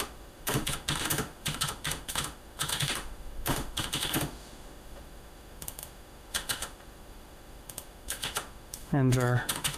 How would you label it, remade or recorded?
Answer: remade